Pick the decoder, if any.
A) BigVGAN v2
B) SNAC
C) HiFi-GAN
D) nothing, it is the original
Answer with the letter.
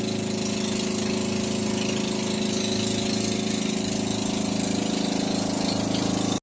D